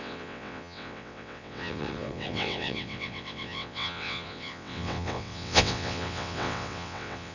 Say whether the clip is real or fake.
fake